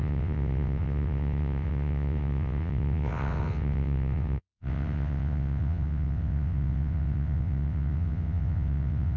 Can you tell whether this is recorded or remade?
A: remade